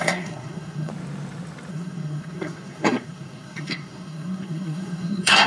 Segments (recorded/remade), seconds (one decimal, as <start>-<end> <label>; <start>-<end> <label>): 0.0-0.9 remade; 0.9-1.7 recorded; 1.7-5.5 remade